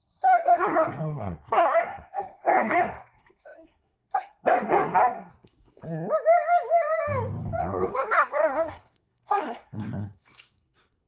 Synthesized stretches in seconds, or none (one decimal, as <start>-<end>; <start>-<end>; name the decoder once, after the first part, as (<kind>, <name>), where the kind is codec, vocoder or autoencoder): 0.0-5.8 (codec, SNAC); 7.6-11.1